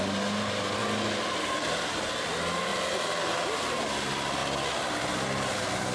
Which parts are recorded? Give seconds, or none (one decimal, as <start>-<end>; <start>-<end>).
0.0-5.9